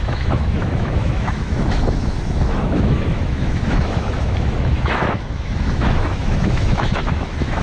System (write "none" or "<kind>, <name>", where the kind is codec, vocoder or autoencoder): autoencoder, DAC-VAE